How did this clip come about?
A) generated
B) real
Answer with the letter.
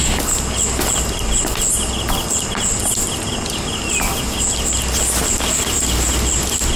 B